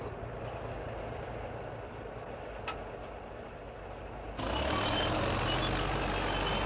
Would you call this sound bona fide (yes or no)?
yes